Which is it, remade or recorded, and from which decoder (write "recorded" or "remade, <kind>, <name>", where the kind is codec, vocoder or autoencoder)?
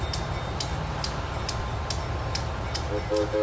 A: recorded